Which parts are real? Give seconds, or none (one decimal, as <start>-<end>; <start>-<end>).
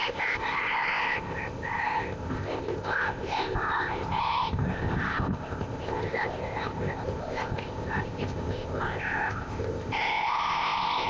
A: none